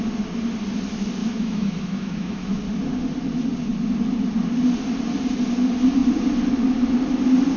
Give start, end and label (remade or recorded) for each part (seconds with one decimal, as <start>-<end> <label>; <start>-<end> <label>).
0.0-1.2 recorded; 1.2-2.6 remade; 2.6-7.6 recorded